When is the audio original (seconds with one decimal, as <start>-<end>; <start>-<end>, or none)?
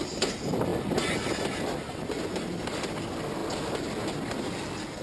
0.0-5.0